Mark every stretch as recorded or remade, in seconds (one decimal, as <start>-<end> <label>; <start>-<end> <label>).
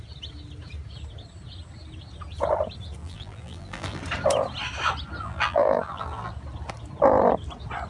0.0-3.0 recorded; 3.0-4.0 remade; 4.0-5.2 recorded; 5.2-6.3 remade; 6.3-7.9 recorded